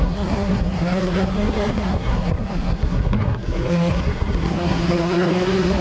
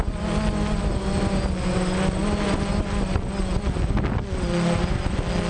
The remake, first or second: first